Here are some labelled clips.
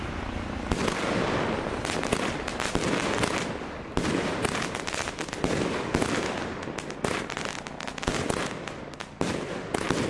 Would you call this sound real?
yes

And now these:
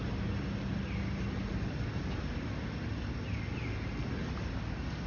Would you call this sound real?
yes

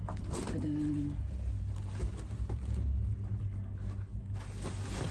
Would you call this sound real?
yes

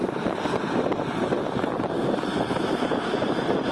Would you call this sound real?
no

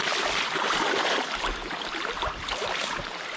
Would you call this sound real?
yes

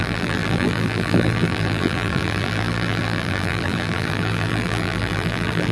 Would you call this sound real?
no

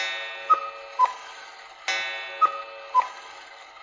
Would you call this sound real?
yes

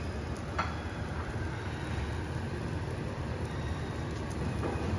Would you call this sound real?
yes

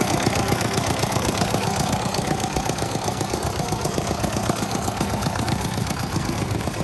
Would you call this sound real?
no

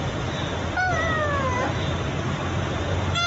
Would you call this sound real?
yes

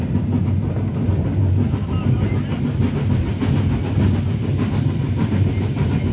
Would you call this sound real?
yes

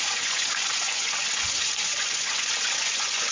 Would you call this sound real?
no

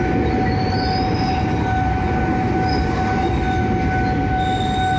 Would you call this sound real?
yes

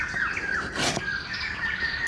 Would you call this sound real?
yes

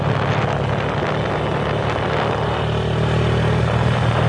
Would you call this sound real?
yes